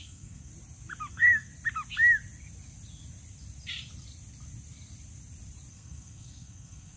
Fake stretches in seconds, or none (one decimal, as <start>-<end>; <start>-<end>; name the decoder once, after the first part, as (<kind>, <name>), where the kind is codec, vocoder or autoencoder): 0.0-0.5 (codec, SNAC); 1.1-1.5; 5.7-7.0